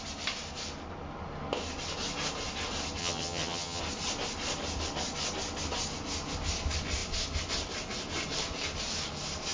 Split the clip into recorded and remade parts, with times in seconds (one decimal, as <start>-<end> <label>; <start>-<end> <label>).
0.0-3.0 recorded; 3.0-3.8 remade; 3.8-9.5 recorded